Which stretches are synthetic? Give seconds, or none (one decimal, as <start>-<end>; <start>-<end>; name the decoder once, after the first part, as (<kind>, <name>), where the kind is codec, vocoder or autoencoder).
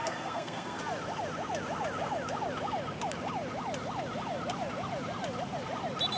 0.0-0.8 (codec, SNAC)